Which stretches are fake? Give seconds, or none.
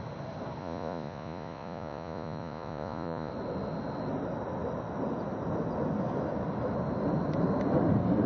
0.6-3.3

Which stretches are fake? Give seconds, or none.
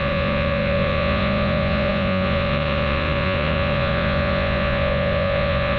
0.0-5.8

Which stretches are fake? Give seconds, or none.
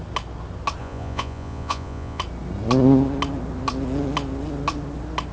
0.8-2.2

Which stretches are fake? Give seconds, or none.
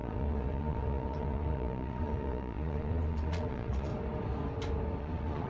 0.0-3.9; 5.0-5.5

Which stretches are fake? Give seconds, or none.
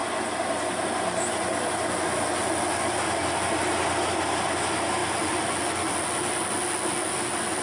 none